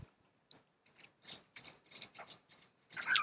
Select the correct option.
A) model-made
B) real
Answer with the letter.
B